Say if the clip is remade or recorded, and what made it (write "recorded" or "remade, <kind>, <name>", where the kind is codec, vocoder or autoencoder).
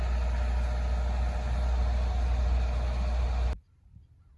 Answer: recorded